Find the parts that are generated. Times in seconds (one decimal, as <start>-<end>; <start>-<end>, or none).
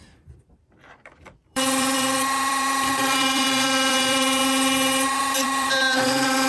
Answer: 0.0-4.4; 5.2-6.5